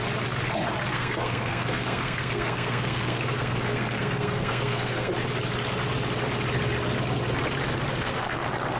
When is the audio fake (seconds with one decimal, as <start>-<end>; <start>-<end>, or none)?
0.9-5.1; 7.9-8.4